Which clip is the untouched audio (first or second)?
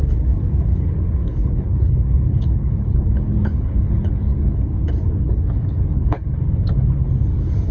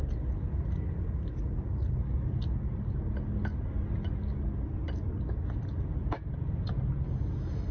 second